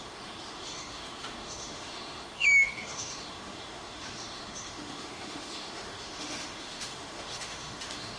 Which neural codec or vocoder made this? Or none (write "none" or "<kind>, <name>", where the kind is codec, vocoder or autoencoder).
autoencoder, DAC-VAE